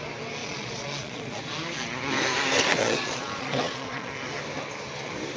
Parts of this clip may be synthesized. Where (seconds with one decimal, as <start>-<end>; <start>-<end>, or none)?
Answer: 0.4-1.4; 2.7-4.1